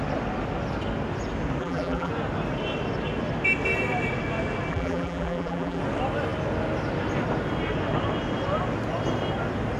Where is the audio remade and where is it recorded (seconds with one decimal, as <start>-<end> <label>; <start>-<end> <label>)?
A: 0.0-1.6 recorded; 1.6-2.1 remade; 2.1-4.7 recorded; 4.7-5.8 remade; 5.8-9.8 recorded